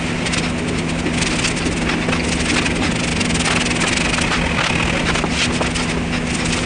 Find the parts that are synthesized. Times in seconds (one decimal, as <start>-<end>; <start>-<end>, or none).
none